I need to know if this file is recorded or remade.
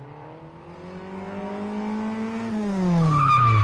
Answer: recorded